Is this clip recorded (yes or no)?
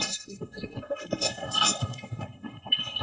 no